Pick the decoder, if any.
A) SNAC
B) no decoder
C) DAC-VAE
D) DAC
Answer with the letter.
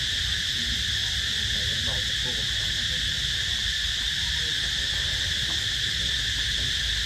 B